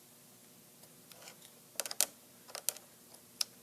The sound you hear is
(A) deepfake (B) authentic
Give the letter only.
B